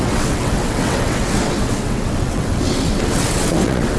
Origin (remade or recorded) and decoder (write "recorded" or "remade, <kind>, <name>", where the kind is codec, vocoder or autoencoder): remade, vocoder, WaveNeXt